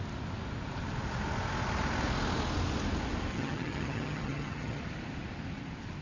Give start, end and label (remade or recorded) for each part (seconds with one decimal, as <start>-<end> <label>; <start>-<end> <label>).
0.0-3.3 recorded; 3.3-4.8 remade; 4.8-6.0 recorded